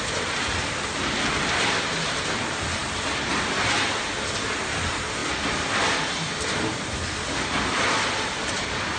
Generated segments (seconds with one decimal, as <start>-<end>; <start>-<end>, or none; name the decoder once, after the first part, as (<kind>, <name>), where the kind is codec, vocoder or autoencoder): none